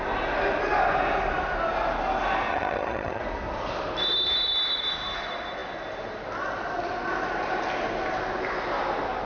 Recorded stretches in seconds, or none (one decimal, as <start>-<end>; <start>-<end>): 0.0-2.5; 3.2-9.3